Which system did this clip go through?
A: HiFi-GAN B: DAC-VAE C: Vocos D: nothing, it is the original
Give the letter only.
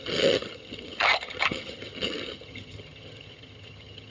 A